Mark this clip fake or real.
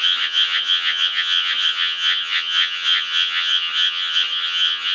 fake